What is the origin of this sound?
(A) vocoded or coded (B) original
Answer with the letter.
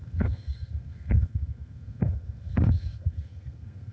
A